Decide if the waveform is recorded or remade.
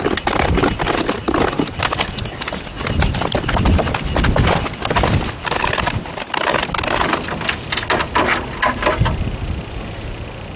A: recorded